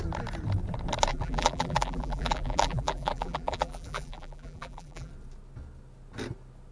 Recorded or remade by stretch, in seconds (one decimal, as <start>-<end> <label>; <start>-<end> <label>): 0.0-1.1 recorded; 1.1-5.1 remade; 5.1-6.7 recorded